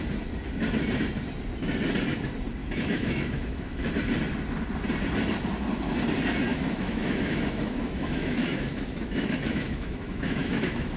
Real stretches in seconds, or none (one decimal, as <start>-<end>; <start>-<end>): 0.0-2.6; 3.9-6.5